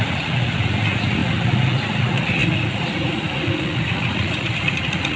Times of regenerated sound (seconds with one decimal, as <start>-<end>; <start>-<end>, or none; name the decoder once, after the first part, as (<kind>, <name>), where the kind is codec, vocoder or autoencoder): 0.0-5.2 (vocoder, Vocos)